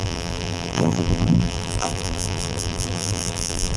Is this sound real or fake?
fake